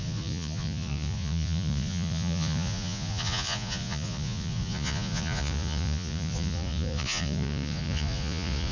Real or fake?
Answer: fake